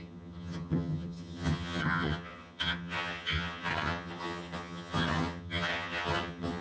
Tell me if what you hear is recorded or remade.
remade